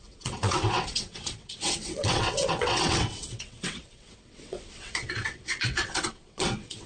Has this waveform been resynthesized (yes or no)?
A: yes